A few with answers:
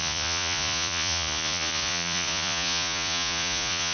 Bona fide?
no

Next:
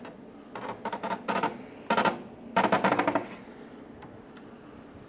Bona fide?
yes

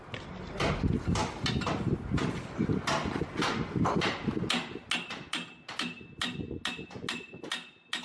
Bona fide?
yes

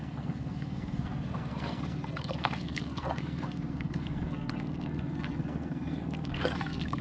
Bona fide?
no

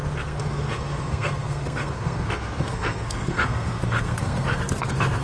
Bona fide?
no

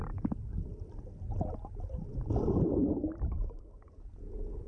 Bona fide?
yes